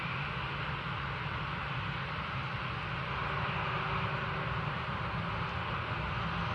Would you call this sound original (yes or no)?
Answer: yes